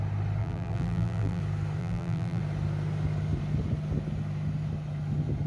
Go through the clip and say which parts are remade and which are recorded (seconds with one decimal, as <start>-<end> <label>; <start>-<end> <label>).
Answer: 0.0-0.4 recorded; 0.4-1.4 remade; 1.4-1.8 recorded; 1.8-2.4 remade; 2.4-5.5 recorded